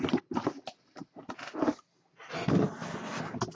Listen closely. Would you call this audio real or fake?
real